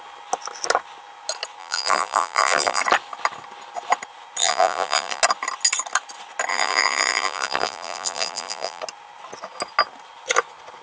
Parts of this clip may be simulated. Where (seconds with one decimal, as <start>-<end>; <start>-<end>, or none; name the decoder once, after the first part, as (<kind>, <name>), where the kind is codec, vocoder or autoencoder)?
1.6-2.8 (vocoder, BigVGAN v2); 4.4-5.2; 6.5-8.8